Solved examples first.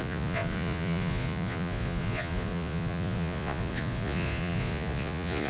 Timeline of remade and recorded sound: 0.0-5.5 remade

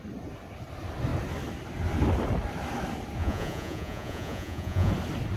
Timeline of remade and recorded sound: 0.0-3.2 recorded; 3.2-4.9 remade; 4.9-5.4 recorded

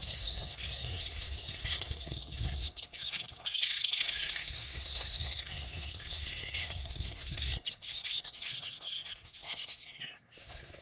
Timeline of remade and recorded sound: 0.0-10.8 remade

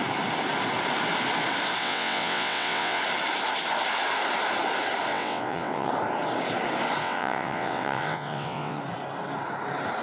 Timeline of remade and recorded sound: 0.0-1.8 recorded; 1.8-3.0 remade; 3.0-5.1 recorded; 5.1-5.9 remade; 5.9-7.0 recorded; 7.0-8.8 remade; 8.8-10.0 recorded

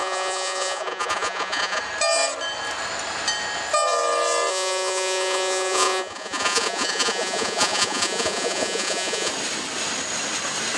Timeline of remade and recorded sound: 0.0-1.8 remade; 1.8-4.5 recorded; 4.5-9.3 remade; 9.3-10.8 recorded

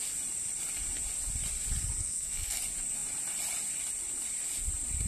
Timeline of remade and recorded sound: 0.0-2.0 recorded; 2.0-2.6 remade; 2.6-5.1 recorded

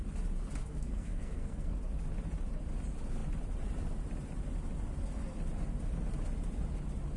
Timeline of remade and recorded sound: 0.0-0.6 recorded; 0.6-1.8 remade; 1.8-7.2 recorded